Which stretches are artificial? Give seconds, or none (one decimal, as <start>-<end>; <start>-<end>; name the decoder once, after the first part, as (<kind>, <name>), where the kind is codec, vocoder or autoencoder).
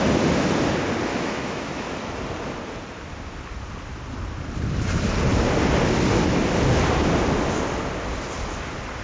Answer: 1.1-1.8 (autoencoder, DAC-VAE)